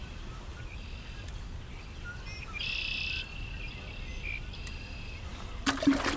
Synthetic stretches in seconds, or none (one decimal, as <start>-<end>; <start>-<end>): none